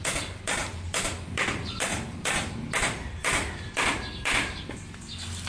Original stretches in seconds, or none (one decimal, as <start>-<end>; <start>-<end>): 0.0-0.6; 1.2-5.5